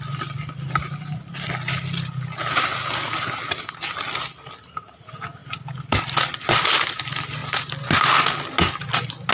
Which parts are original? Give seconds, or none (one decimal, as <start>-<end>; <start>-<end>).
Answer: 0.0-9.3